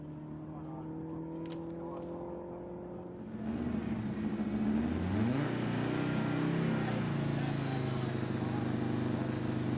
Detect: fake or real real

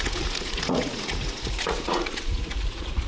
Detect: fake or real fake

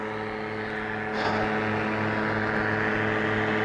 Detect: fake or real real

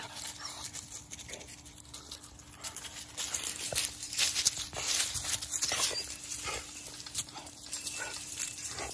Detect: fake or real real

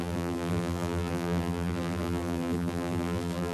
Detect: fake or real fake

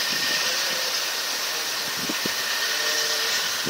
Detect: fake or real fake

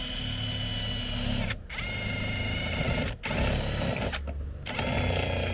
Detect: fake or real real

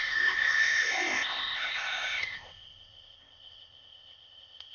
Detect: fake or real fake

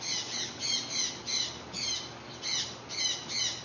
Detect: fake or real real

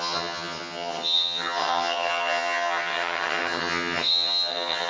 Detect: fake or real fake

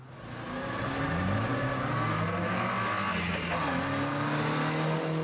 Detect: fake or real real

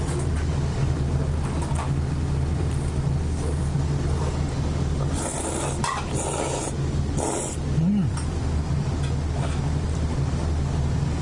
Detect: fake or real real